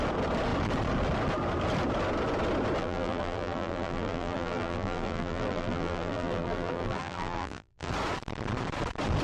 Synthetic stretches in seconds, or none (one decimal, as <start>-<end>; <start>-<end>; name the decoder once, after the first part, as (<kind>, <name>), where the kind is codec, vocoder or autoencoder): 2.8-7.9 (vocoder, BigVGAN v2)

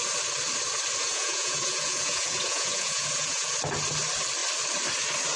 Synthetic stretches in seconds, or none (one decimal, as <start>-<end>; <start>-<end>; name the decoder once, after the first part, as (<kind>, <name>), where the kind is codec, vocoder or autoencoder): 1.0-3.5 (vocoder, Vocos)

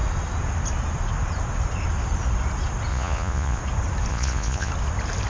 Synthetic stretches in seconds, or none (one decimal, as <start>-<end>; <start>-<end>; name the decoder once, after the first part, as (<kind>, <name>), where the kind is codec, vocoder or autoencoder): 2.9-3.6 (vocoder, Vocos); 4.1-4.7

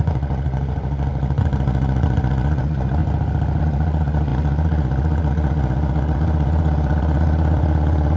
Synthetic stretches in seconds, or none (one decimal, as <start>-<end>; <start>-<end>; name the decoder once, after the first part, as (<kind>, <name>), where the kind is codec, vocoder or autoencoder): 0.0-3.0 (vocoder, Vocos); 3.6-8.2

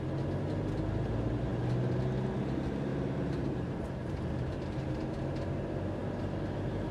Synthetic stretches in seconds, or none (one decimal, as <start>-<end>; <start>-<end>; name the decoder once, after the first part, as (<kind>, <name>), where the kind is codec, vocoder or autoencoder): 2.9-3.9 (vocoder, BigVGAN v2)